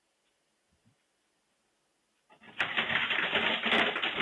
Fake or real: real